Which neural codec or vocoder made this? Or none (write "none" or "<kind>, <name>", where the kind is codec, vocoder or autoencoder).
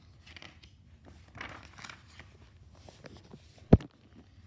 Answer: none